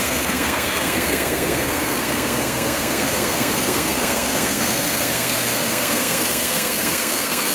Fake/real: fake